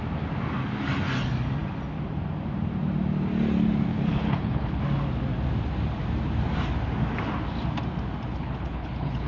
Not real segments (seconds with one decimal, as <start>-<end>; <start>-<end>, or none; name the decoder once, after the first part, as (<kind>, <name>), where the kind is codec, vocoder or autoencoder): 3.9-4.8 (codec, HILCodec); 8.3-9.3